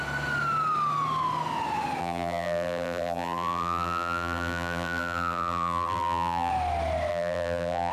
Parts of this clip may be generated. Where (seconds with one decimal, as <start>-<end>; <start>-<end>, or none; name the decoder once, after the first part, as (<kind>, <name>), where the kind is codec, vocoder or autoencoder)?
2.0-6.5 (vocoder, BigVGAN v2); 7.1-7.9